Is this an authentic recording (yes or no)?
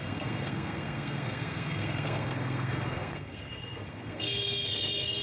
no